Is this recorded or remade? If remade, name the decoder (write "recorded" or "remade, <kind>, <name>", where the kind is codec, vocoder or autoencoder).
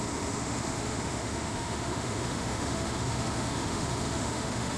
remade, autoencoder, DAC-VAE